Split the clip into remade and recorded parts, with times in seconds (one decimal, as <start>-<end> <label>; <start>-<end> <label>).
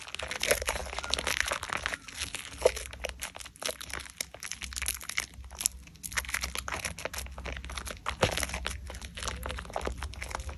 0.0-10.6 recorded